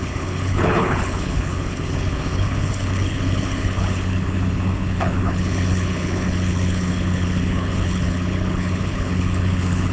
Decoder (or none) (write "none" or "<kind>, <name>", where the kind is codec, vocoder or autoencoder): codec, HILCodec